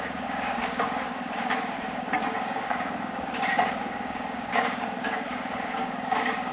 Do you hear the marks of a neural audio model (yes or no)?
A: yes